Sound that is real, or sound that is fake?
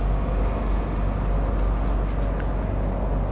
real